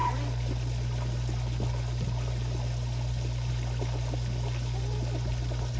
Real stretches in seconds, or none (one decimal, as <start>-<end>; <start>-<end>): 0.0-5.8